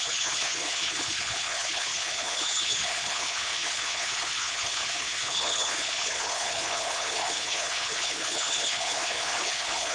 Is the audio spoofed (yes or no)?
yes